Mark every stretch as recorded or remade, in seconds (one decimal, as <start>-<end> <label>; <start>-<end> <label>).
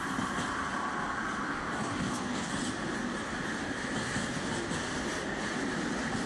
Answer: 0.0-1.5 recorded; 1.5-2.5 remade; 2.5-6.3 recorded